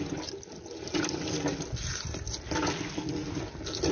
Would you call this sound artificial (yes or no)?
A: no